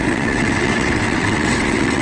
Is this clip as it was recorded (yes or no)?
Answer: no